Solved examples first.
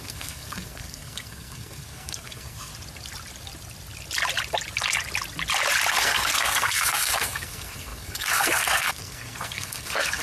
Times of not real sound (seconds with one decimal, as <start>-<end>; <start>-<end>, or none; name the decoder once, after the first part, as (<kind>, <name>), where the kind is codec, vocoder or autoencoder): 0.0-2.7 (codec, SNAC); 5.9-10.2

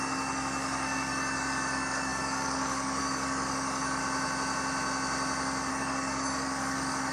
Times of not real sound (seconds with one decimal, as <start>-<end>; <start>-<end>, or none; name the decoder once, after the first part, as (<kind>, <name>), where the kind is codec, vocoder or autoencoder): 0.0-4.0 (codec, DAC); 5.7-7.1

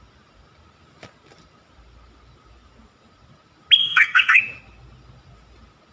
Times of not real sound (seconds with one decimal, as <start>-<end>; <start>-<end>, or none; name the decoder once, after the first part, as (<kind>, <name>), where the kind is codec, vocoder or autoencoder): 3.8-4.4 (codec, SNAC)

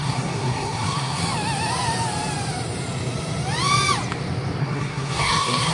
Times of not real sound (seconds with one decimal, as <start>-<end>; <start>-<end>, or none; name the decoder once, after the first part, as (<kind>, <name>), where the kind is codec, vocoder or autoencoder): 0.0-1.2 (codec, SNAC); 4.6-5.7

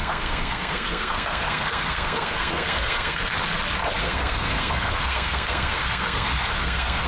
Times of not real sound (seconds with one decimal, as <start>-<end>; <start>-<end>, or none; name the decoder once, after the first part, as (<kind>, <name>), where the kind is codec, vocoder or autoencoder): 0.0-3.3 (codec, SNAC); 4.0-7.1

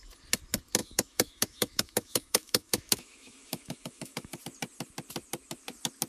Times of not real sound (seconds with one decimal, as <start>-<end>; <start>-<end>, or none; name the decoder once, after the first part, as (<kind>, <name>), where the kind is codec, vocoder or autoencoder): 0.8-4.4 (autoencoder, DAC-VAE)

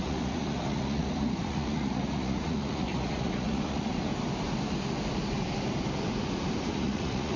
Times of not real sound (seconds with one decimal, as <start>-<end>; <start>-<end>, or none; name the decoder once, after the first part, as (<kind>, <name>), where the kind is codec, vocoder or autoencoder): 0.0-4.1 (vocoder, Vocos); 6.6-7.4